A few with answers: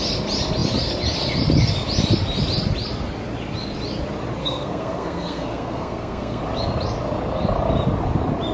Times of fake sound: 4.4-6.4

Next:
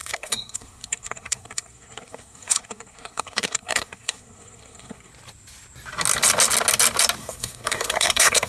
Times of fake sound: 0.0-5.1; 7.2-8.5

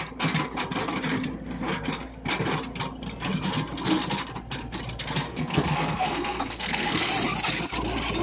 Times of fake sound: 5.3-7.1

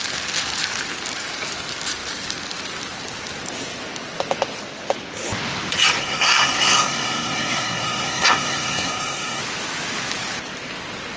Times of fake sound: 6.0-9.4

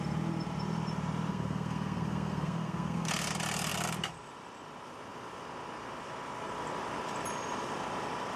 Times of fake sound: 1.3-3.1